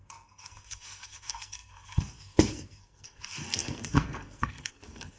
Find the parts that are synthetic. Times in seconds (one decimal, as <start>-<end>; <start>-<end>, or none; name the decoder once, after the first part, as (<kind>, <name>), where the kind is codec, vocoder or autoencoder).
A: 0.0-5.2 (codec, SNAC)